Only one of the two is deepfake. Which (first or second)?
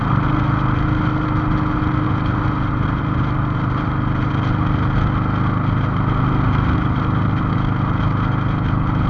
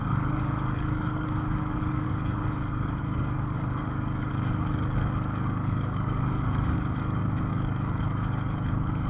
second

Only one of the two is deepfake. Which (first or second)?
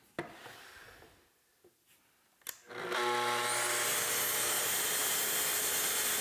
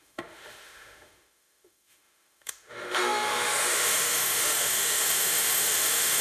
second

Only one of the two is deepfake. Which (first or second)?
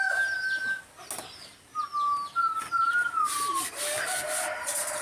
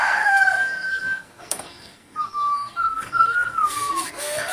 second